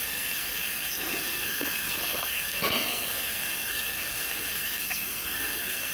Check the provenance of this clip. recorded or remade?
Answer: remade